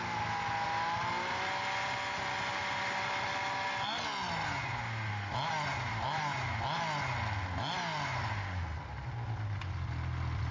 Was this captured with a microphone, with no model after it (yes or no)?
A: yes